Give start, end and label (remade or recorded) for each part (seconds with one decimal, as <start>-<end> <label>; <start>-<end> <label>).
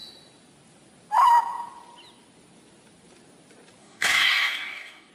0.0-3.8 recorded; 3.8-5.1 remade